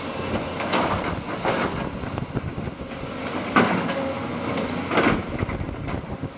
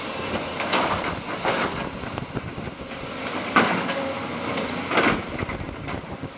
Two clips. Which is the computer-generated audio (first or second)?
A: second